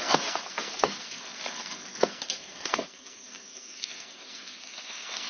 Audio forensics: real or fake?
fake